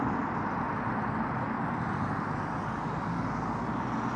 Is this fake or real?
real